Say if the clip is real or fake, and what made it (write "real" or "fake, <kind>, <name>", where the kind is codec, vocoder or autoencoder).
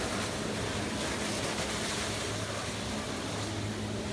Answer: real